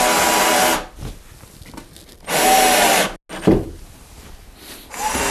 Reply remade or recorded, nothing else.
recorded